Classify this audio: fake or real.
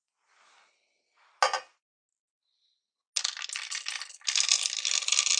real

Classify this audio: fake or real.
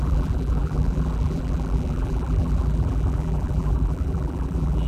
fake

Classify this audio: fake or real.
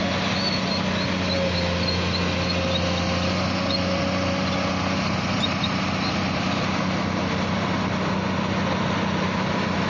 real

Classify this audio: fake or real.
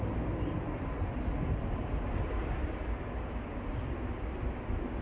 real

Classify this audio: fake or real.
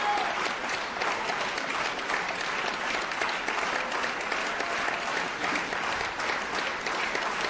real